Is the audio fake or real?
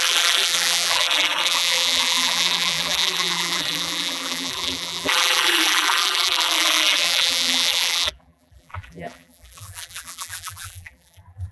fake